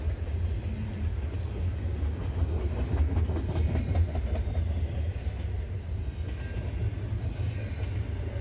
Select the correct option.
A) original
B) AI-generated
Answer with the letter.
A